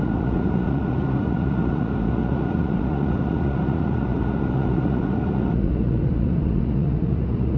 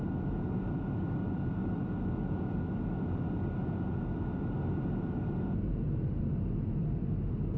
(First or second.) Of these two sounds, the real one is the second